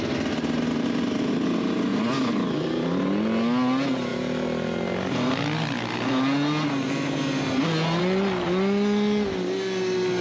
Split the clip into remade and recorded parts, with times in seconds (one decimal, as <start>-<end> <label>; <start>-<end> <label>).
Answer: 0.0-1.9 recorded; 1.9-3.0 remade; 3.0-10.2 recorded